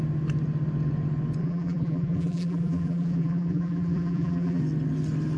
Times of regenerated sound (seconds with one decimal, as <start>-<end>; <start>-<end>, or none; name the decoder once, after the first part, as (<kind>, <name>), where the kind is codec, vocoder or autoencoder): 1.4-4.6 (vocoder, BigVGAN v2)